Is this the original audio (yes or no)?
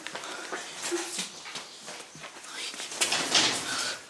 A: yes